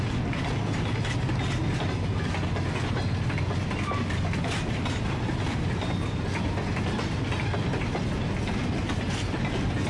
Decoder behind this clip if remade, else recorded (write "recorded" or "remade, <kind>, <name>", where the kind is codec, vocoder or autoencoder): recorded